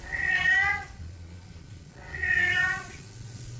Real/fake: fake